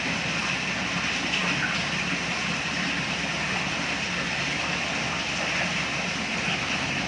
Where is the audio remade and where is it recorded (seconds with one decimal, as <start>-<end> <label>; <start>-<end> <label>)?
0.0-7.1 recorded